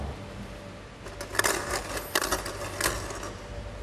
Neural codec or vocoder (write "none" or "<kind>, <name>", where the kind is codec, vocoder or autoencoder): none